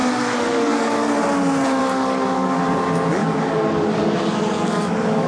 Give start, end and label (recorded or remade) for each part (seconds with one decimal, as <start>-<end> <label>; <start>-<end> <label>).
0.0-1.2 remade; 1.2-1.8 recorded; 1.8-2.6 remade; 2.6-3.2 recorded; 3.2-5.3 remade